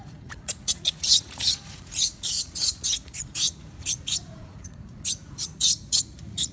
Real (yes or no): no